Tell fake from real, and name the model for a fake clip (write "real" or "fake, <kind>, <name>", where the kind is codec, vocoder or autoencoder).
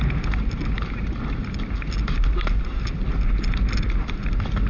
real